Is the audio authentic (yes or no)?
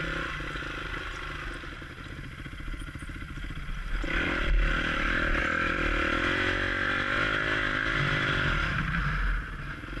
yes